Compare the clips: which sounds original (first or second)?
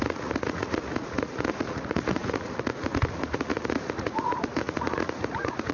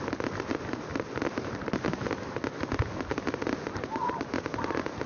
second